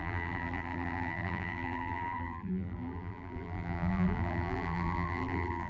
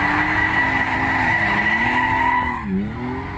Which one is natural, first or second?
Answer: second